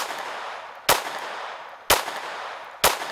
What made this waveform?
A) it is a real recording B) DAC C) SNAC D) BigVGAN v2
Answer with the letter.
A